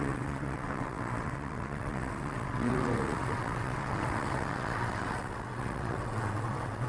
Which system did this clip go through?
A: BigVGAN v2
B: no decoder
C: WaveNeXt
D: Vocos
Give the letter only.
C